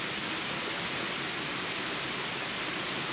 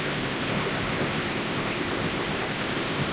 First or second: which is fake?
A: second